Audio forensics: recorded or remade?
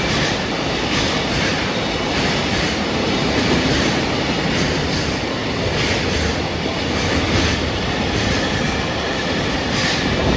recorded